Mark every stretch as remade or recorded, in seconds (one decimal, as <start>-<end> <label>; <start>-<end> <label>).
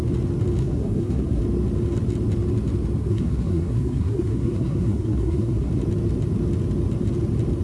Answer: 0.0-0.6 recorded; 0.6-1.4 remade; 1.4-3.0 recorded; 3.0-5.7 remade; 5.7-7.6 recorded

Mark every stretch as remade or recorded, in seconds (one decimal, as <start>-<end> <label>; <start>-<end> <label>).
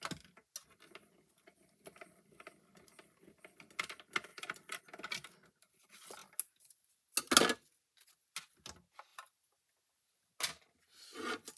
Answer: 0.0-4.3 recorded; 4.3-4.8 remade; 4.8-9.1 recorded; 9.1-9.6 remade; 9.6-11.6 recorded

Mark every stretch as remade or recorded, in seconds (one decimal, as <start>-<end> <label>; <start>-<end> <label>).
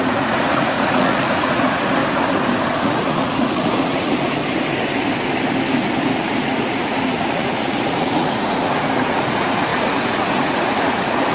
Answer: 0.0-2.0 remade; 2.0-2.7 recorded; 2.7-4.4 remade; 4.4-6.1 recorded; 6.1-11.3 remade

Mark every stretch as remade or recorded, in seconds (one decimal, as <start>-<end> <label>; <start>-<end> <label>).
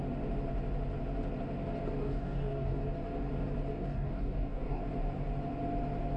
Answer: 0.0-2.0 recorded; 2.0-2.8 remade; 2.8-3.7 recorded; 3.7-4.8 remade; 4.8-6.2 recorded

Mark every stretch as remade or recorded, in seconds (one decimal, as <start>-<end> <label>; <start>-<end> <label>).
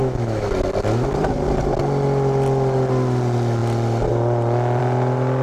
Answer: 0.0-0.5 remade; 0.5-5.4 recorded